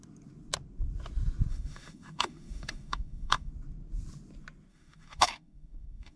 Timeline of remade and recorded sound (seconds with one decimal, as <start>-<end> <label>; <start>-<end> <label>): 0.0-1.5 recorded; 1.5-3.5 remade; 3.5-4.7 recorded; 4.7-6.2 remade